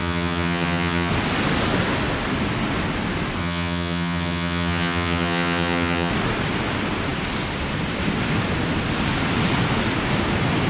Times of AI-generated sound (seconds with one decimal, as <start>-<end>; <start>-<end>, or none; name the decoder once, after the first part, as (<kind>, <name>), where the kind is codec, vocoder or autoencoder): 0.0-1.1 (vocoder, HiFi-GAN); 3.4-6.1